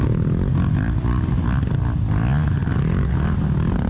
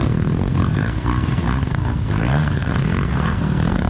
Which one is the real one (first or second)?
first